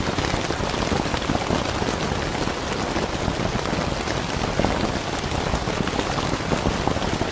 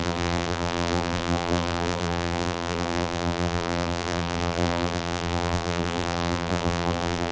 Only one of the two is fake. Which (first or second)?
second